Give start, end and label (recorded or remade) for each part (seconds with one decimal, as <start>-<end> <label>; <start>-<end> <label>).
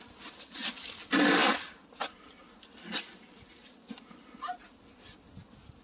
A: 0.0-5.8 recorded